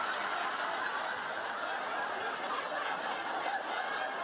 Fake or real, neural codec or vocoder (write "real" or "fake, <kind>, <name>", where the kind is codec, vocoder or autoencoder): real